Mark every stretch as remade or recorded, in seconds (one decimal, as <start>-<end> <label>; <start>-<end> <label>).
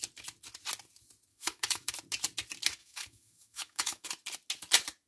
0.0-1.3 recorded; 1.3-1.9 remade; 1.9-2.8 recorded; 2.8-4.1 remade; 4.1-5.1 recorded